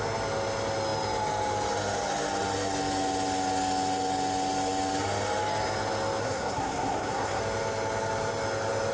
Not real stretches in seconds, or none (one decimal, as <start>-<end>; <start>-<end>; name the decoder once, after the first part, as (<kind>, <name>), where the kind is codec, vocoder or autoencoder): 6.2-7.4 (codec, SNAC)